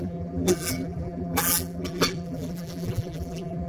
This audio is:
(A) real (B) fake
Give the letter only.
B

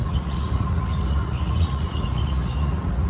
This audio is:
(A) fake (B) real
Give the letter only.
A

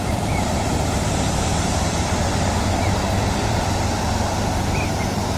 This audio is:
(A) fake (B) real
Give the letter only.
A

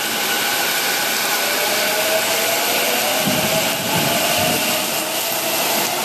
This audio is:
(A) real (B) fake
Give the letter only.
A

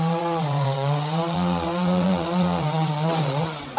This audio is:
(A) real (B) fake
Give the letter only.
B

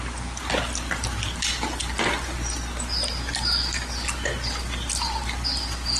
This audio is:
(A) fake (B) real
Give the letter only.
B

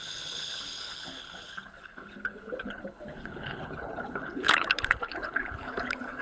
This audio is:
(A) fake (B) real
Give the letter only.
A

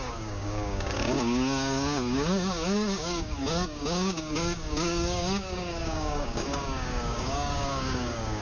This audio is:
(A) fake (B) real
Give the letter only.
A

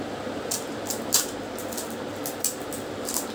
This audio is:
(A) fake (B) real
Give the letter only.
B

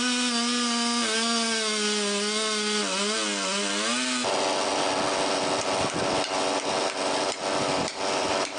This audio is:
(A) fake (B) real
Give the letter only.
B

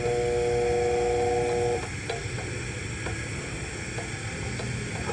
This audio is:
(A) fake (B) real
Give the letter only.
B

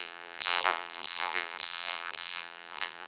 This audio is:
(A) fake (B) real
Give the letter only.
A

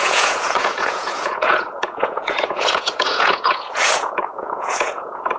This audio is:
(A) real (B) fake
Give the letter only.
B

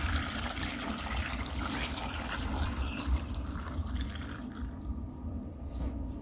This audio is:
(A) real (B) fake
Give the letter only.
B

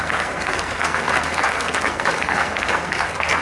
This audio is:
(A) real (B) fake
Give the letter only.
B